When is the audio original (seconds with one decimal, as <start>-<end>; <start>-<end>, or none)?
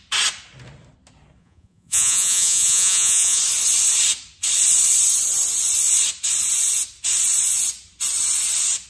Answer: 0.0-1.4; 3.4-8.9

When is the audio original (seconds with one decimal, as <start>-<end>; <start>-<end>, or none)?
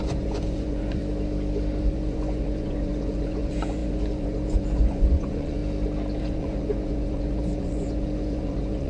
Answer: 1.0-1.8; 5.6-6.2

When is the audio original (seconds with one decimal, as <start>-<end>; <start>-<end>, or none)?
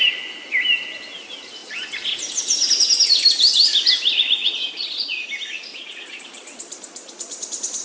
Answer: 0.0-4.4; 5.3-5.7